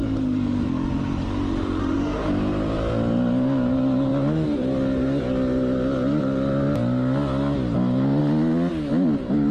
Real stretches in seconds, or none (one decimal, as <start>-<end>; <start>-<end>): 0.0-1.8; 2.3-9.5